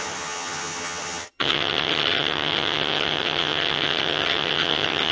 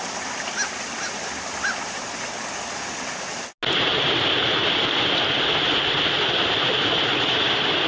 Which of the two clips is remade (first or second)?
first